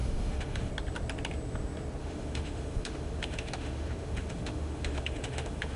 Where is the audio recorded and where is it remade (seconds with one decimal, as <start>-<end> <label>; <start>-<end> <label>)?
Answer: 0.0-0.7 remade; 0.7-2.0 recorded; 2.0-5.8 remade